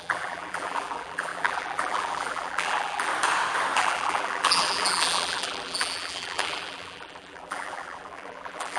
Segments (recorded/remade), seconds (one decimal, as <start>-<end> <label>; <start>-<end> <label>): 0.0-3.1 remade; 3.1-3.8 recorded; 3.8-8.8 remade